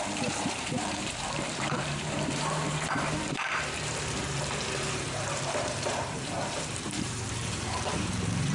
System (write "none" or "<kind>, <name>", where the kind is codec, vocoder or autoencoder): vocoder, BigVGAN v2